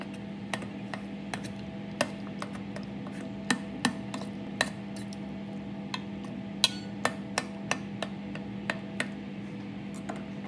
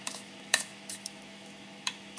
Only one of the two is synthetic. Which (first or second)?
second